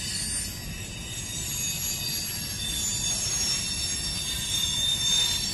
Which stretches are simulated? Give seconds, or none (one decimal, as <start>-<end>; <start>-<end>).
4.6-5.5